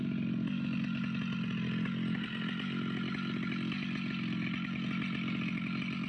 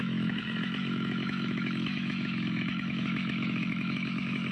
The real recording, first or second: first